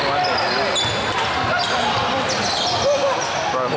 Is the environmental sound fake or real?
real